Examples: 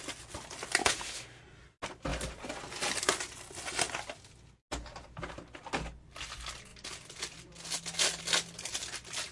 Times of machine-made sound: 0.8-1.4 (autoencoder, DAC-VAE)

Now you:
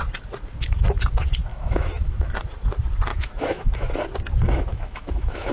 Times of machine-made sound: 1.5-2.3 (autoencoder, DAC-VAE); 3.1-3.9; 4.7-5.5

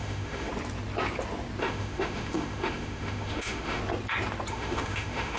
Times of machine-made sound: 0.0-0.5 (autoencoder, DAC-VAE); 1.6-3.8; 4.5-5.4

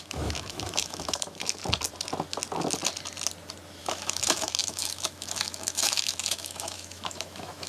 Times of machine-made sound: 0.0-1.6 (autoencoder, DAC-VAE); 3.8-7.7